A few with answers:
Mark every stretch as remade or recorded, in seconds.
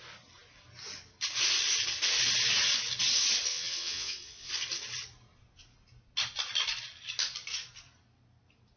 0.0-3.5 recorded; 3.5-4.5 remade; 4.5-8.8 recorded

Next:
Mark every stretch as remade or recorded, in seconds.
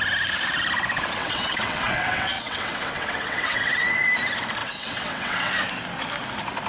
0.0-1.2 recorded; 1.2-4.1 remade; 4.1-4.6 recorded; 4.6-5.5 remade; 5.5-6.7 recorded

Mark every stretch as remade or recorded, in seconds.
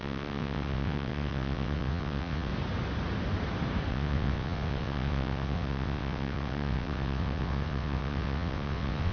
0.0-2.5 remade; 2.5-3.9 recorded; 3.9-9.1 remade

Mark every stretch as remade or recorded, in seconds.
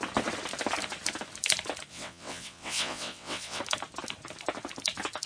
0.0-1.9 recorded; 1.9-3.6 remade; 3.6-5.3 recorded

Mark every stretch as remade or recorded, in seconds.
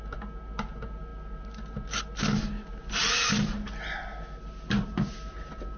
0.0-5.8 recorded